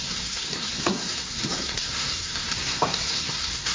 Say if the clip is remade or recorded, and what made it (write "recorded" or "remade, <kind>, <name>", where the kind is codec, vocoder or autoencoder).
remade, codec, SNAC